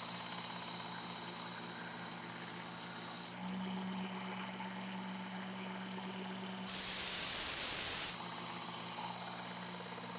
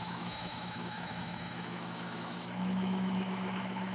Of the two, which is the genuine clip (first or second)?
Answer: first